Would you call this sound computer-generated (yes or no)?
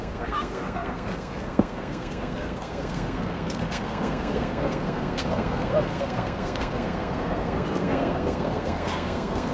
yes